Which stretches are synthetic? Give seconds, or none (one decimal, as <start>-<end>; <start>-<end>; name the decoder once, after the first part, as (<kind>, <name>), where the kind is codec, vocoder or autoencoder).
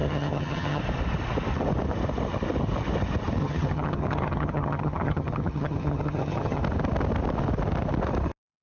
0.0-0.8 (vocoder, HiFi-GAN); 3.4-6.6